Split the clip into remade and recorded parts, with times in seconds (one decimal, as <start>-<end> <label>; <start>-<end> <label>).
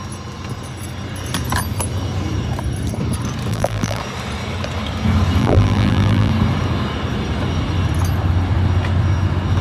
0.0-3.5 recorded; 3.5-4.0 remade; 4.0-5.4 recorded; 5.4-6.3 remade; 6.3-9.6 recorded